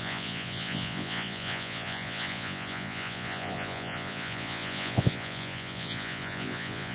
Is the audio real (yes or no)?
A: no